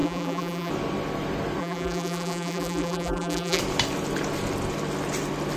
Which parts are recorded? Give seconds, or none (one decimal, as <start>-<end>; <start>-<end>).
0.7-1.6; 3.6-5.6